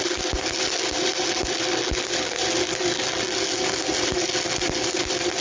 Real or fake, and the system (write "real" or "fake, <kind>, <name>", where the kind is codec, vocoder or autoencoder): real